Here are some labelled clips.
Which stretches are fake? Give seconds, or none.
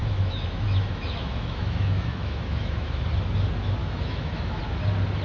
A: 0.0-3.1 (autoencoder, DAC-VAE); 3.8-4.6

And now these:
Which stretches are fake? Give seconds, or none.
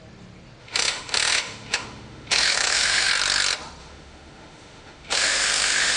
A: 0.6-3.1 (autoencoder, DAC-VAE); 3.8-6.0